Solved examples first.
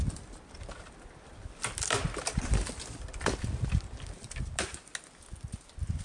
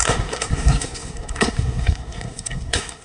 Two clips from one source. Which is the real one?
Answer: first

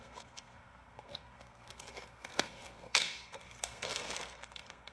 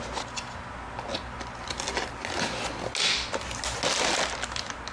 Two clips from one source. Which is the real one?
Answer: second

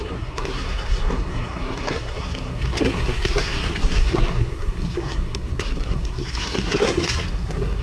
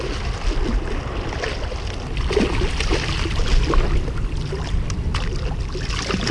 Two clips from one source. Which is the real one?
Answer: second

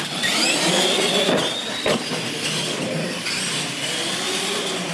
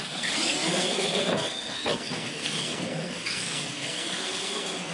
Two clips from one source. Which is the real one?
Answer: first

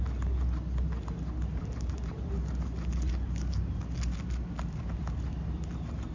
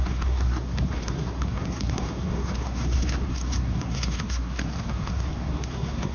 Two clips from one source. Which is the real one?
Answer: first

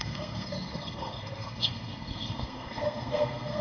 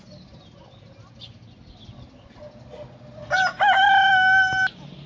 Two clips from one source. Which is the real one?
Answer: second